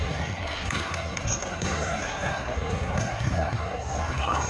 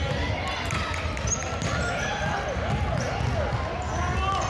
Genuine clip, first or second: second